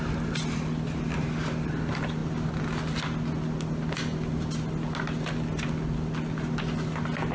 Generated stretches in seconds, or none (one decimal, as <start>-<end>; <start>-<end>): none

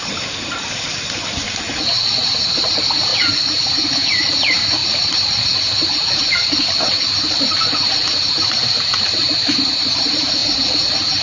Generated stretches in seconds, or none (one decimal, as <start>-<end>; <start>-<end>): 0.0-11.2